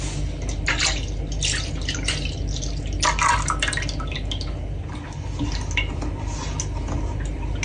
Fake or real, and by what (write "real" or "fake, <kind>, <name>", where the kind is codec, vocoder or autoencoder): real